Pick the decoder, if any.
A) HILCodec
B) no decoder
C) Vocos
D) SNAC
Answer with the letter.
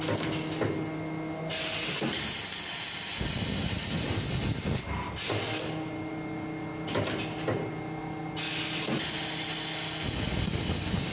B